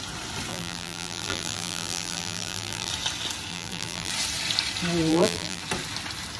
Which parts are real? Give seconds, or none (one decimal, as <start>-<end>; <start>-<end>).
0.0-0.5; 2.9-3.5; 4.1-5.1; 5.6-6.4